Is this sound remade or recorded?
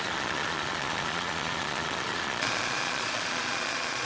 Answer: remade